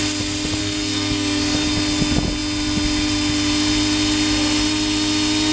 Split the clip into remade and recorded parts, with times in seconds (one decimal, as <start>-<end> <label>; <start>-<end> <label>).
0.0-0.6 recorded; 0.6-1.7 remade; 1.7-5.5 recorded